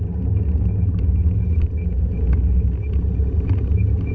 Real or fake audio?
real